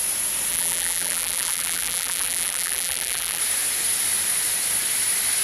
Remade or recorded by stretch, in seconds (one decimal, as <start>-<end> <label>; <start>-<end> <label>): 0.0-0.5 recorded; 0.5-3.4 remade; 3.4-5.4 recorded